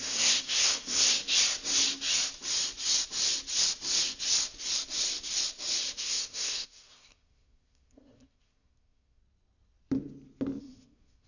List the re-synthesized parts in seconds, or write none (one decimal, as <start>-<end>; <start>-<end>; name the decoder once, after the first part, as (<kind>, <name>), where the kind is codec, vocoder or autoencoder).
0.0-1.2 (codec, SNAC); 6.0-9.2; 10.6-11.3